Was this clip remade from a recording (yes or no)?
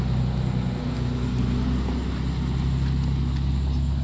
no